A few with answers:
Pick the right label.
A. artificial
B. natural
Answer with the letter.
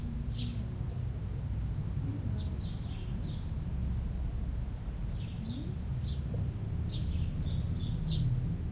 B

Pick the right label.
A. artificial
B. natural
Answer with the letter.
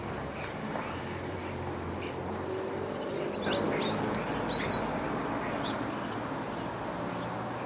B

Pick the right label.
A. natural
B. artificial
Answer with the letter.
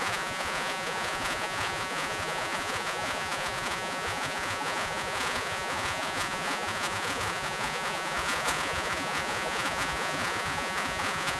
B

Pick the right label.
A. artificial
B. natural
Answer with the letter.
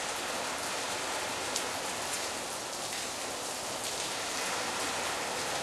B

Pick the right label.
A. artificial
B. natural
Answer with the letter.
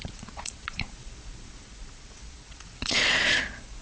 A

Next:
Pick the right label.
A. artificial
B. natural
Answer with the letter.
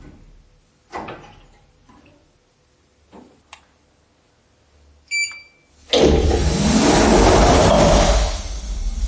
B